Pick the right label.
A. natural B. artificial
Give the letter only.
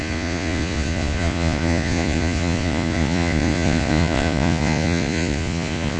B